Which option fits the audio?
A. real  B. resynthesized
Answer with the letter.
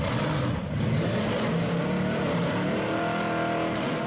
A